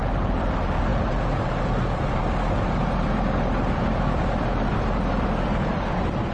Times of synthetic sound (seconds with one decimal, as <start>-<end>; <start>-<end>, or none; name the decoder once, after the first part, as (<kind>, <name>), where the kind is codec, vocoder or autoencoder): 0.0-2.2 (vocoder, BigVGAN v2); 5.7-6.3